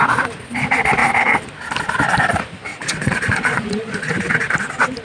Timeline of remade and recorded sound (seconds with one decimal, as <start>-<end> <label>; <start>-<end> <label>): 0.0-2.7 recorded; 2.7-4.1 remade; 4.1-5.0 recorded